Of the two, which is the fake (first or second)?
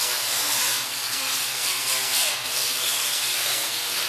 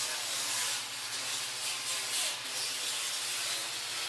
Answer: first